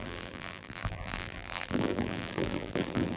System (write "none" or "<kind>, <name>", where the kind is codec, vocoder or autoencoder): vocoder, BigVGAN v2